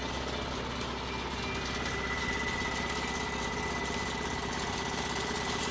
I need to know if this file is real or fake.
real